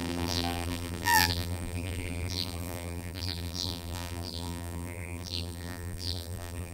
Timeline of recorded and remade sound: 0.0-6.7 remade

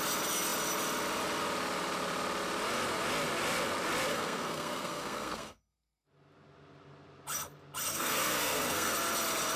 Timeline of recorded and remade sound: 0.0-4.1 recorded; 4.1-5.6 remade; 5.6-7.9 recorded; 7.9-8.9 remade; 8.9-9.6 recorded

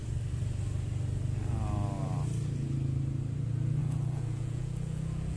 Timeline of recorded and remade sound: 0.0-3.8 recorded; 3.8-5.4 remade